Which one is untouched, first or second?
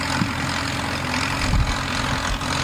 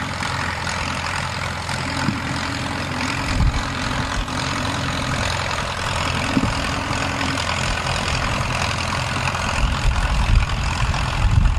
first